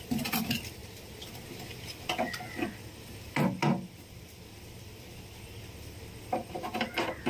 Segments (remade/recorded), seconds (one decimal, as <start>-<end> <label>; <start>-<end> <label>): 0.0-7.3 recorded